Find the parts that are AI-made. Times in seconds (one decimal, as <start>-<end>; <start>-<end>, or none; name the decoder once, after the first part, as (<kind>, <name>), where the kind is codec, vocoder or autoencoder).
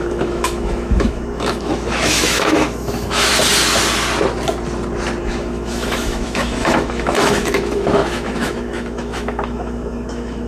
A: 0.0-3.3 (autoencoder, DAC-VAE); 5.2-10.5